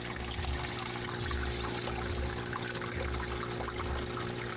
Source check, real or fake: real